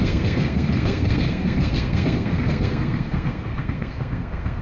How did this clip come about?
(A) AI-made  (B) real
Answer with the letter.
A